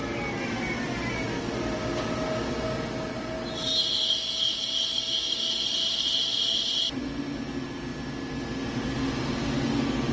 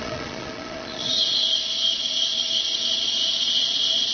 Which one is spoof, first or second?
second